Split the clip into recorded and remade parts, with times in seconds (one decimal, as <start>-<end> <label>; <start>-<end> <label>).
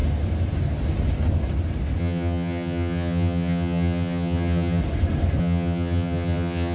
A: 0.0-2.0 recorded; 2.0-4.8 remade; 4.8-5.4 recorded; 5.4-6.7 remade